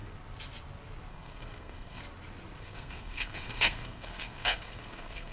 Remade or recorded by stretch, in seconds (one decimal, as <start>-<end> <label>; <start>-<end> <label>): 0.0-1.1 recorded; 1.1-2.0 remade; 2.0-2.6 recorded; 2.6-5.3 remade